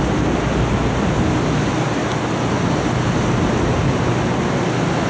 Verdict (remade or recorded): recorded